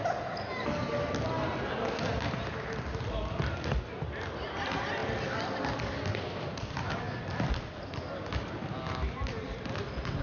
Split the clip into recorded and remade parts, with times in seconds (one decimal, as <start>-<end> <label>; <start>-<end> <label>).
0.0-10.2 recorded